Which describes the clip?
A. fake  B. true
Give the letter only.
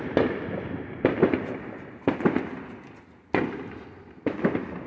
B